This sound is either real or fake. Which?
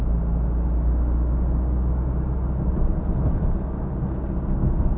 real